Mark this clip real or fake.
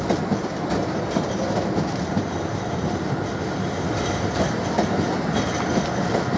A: real